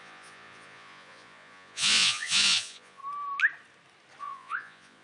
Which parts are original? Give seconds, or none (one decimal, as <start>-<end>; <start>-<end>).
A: 3.0-4.2